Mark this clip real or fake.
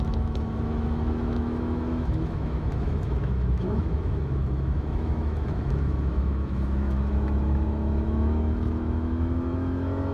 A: fake